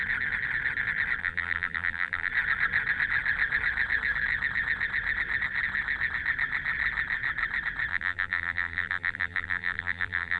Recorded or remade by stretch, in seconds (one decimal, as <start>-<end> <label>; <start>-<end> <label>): 0.0-1.2 recorded; 1.2-2.3 remade; 2.3-7.9 recorded; 7.9-10.4 remade